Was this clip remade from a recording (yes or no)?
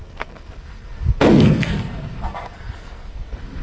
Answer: yes